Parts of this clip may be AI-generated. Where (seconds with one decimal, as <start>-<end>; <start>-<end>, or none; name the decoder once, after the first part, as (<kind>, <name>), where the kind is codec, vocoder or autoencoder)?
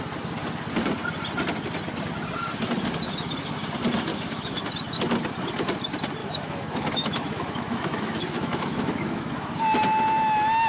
4.1-4.7 (autoencoder, DAC-VAE); 6.2-9.6